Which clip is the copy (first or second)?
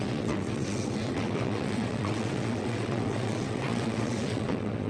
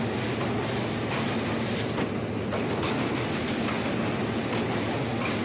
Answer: first